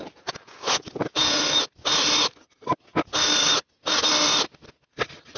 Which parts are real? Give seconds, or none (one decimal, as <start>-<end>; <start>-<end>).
1.4-5.4